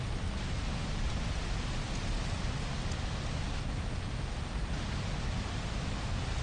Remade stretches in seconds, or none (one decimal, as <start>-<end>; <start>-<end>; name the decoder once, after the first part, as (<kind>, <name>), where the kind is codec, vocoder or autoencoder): none